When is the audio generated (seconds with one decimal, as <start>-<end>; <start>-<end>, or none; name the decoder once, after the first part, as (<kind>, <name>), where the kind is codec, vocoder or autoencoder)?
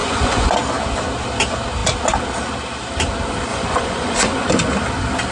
0.0-0.5 (vocoder, Vocos); 3.5-4.5